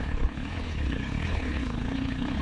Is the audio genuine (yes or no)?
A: no